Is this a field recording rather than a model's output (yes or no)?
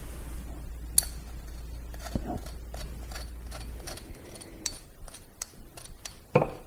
yes